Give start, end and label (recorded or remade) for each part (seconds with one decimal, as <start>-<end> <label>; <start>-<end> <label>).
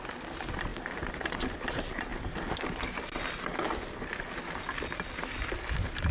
0.0-6.1 recorded